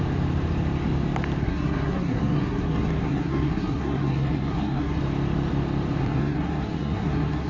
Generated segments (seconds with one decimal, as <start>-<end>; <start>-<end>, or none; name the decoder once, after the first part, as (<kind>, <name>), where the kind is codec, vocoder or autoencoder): 1.4-5.0 (codec, SNAC); 6.0-7.5